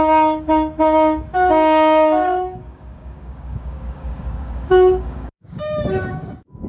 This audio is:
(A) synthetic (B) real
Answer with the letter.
A